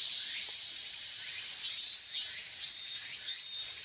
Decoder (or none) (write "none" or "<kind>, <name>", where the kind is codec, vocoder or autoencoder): vocoder, BigVGAN v2